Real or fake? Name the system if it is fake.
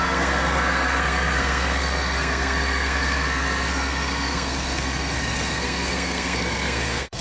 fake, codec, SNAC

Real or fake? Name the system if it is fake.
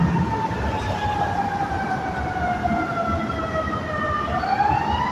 real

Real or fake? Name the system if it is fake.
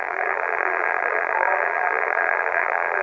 fake, vocoder, BigVGAN v2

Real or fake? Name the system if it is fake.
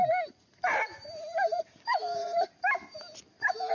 real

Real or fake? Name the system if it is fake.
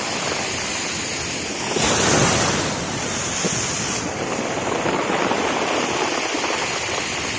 real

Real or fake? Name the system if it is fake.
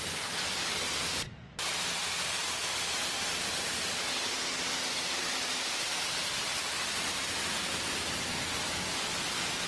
real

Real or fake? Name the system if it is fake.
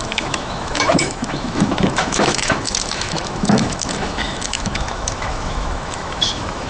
fake, autoencoder, DAC-VAE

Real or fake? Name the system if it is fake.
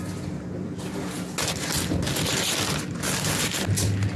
real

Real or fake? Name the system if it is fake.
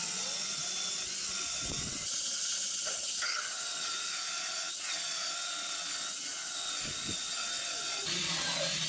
fake, vocoder, WaveNeXt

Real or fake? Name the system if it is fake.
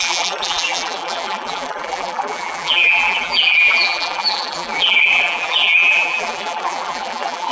fake, vocoder, BigVGAN v2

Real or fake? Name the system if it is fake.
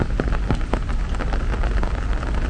real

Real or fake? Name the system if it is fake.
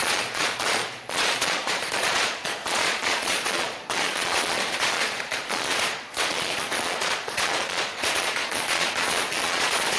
fake, vocoder, Vocos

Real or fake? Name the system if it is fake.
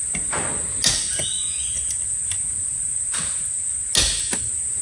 real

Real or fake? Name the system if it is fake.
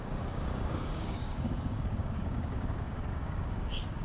fake, codec, DAC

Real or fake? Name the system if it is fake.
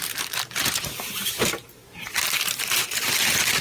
fake, vocoder, BigVGAN v2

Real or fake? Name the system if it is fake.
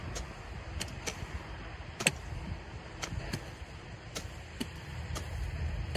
real